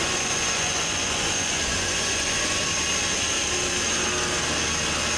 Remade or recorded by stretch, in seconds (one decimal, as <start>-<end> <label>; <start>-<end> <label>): 0.0-2.7 remade; 2.7-5.2 recorded